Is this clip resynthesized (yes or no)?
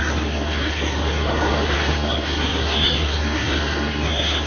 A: yes